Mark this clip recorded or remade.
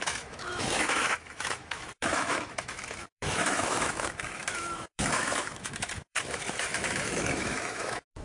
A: remade